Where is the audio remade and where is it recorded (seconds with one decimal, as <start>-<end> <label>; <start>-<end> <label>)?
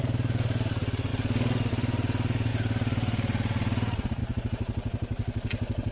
0.0-1.1 remade; 1.1-1.7 recorded; 1.7-5.9 remade